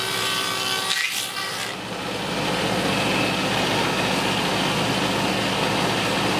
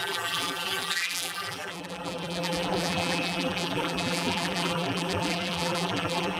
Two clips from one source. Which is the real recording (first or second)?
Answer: first